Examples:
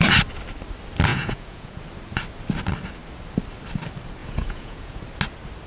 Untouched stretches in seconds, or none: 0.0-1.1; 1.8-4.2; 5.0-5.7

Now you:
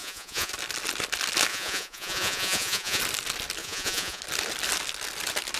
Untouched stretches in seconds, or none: 0.5-1.5; 3.0-3.6; 4.2-5.6

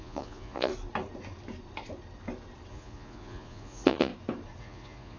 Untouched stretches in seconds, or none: 0.7-2.7; 4.1-4.6